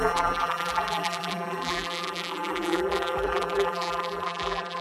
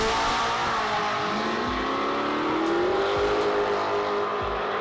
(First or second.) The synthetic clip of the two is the first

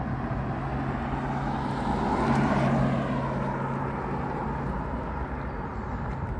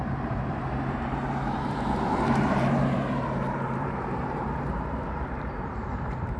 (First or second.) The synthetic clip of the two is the second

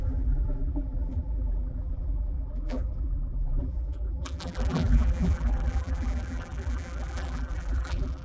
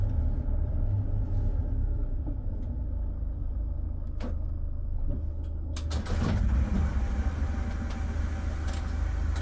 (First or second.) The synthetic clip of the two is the first